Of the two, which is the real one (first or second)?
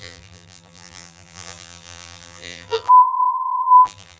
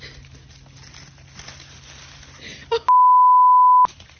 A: second